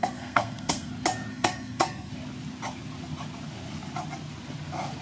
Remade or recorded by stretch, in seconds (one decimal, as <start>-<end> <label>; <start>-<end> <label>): 0.0-0.9 remade; 0.9-1.3 recorded; 1.3-2.1 remade; 2.1-5.0 recorded